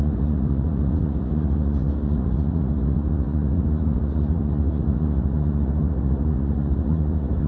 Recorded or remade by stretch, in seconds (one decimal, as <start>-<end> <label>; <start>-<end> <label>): 0.0-7.5 remade